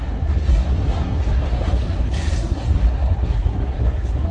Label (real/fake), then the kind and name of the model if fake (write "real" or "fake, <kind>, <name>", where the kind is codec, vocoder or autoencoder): fake, codec, SNAC